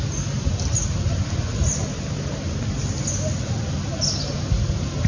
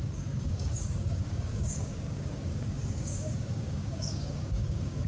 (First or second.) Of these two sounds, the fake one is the second